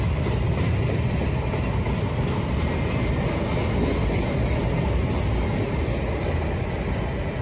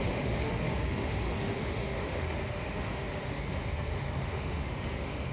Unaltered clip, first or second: first